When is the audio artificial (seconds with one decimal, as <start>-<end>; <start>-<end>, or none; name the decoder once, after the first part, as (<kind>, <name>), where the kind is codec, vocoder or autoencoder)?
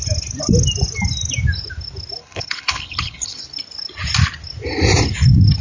2.2-3.4 (codec, HILCodec)